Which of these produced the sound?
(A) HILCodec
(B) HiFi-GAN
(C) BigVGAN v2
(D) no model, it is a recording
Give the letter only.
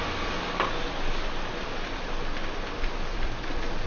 D